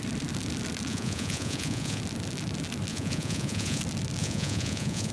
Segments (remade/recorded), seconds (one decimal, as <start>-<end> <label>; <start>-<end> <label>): 0.0-0.9 recorded; 0.9-2.0 remade; 2.0-2.9 recorded; 2.9-3.8 remade; 3.8-4.2 recorded; 4.2-5.1 remade